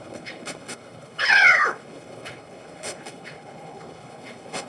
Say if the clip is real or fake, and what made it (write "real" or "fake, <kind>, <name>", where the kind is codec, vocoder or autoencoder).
fake, codec, HILCodec